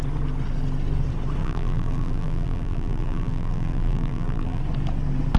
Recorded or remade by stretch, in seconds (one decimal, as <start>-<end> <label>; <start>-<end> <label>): 0.0-1.4 recorded; 1.4-4.6 remade; 4.6-5.4 recorded